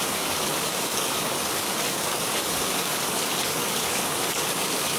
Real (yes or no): no